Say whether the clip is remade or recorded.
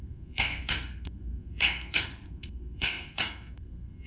remade